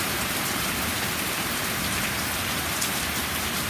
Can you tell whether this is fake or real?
fake